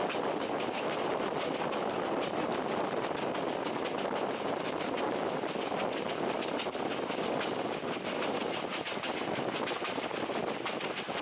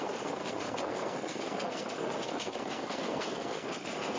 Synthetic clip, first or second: second